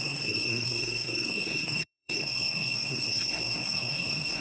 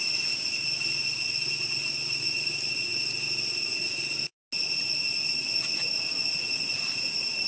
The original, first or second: second